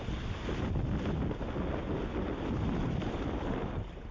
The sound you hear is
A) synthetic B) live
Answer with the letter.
B